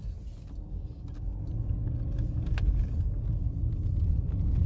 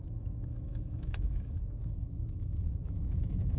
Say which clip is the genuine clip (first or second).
first